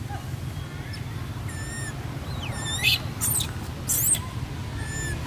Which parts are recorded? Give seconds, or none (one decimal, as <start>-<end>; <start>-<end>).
0.0-5.3